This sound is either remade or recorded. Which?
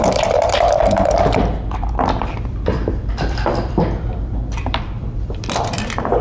remade